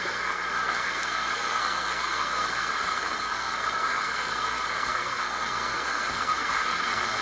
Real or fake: fake